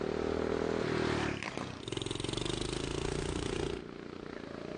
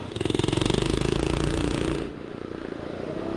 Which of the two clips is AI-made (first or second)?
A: second